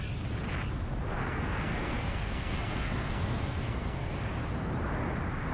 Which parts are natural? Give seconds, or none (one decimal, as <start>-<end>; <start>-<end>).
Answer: 0.0-1.2; 4.1-5.5